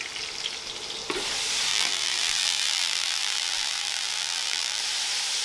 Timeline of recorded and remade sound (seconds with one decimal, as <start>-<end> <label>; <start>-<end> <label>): 0.0-1.7 recorded; 1.7-4.8 remade; 4.8-5.4 recorded